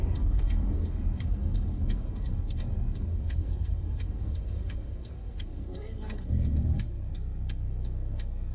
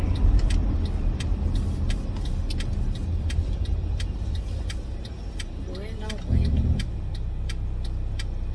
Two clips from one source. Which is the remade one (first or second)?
first